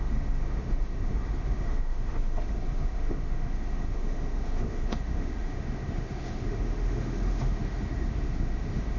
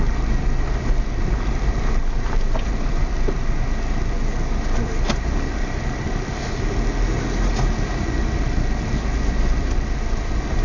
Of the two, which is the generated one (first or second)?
first